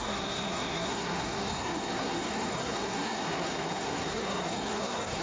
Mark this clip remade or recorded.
remade